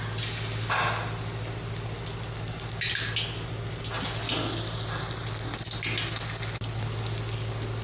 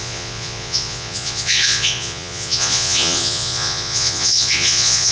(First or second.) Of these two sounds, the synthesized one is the second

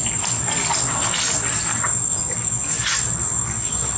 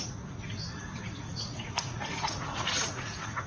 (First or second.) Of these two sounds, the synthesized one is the second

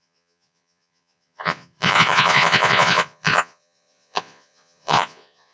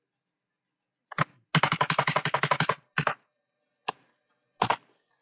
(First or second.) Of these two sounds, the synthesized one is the first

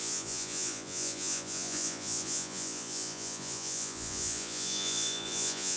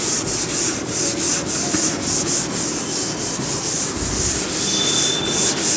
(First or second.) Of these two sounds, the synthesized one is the first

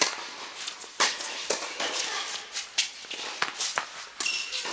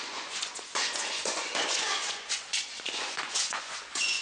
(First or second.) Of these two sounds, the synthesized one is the second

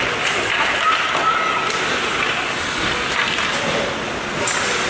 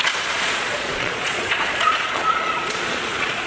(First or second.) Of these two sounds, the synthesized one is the second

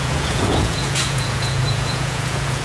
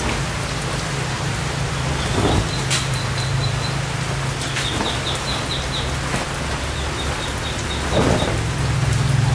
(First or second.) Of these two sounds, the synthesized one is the first